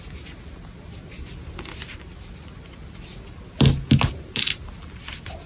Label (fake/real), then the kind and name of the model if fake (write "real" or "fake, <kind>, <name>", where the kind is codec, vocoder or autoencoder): real